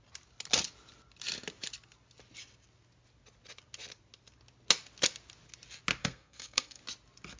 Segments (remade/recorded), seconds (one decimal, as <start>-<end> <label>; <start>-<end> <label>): 0.0-6.0 recorded; 6.0-6.8 remade; 6.8-7.4 recorded